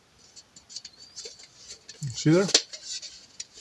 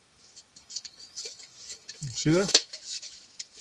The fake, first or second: second